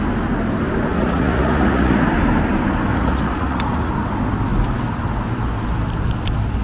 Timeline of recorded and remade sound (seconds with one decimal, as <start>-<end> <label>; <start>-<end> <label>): 0.0-0.9 recorded; 0.9-2.0 remade; 2.0-2.9 recorded; 2.9-3.9 remade; 3.9-6.6 recorded